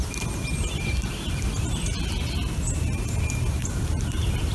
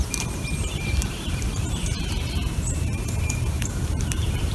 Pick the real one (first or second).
first